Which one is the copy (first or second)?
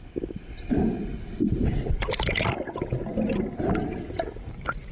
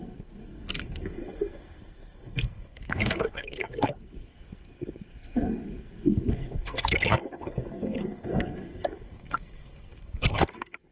second